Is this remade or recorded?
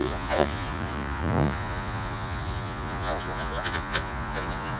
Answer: remade